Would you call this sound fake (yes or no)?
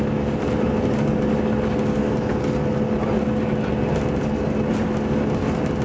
no